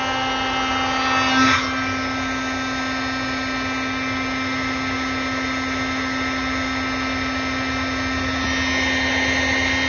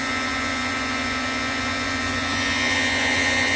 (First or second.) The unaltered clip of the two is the first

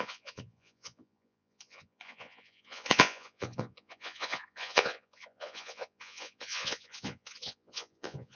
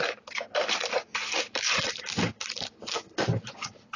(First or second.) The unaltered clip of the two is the second